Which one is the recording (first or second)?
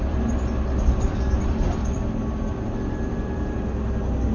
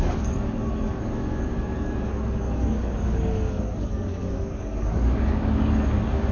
first